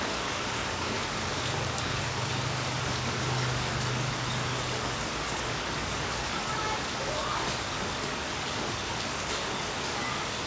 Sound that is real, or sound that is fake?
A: fake